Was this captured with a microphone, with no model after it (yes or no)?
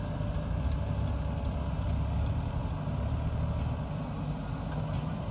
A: yes